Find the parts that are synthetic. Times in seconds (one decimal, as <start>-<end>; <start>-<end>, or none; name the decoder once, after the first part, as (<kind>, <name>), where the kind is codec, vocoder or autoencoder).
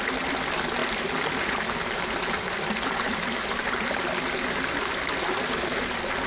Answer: 0.8-4.4 (vocoder, BigVGAN v2)